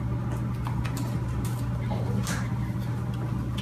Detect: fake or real real